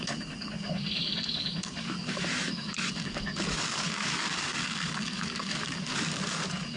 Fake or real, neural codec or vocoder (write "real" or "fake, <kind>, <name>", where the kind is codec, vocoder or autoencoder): fake, codec, DAC